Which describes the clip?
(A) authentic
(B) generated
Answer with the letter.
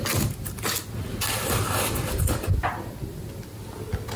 A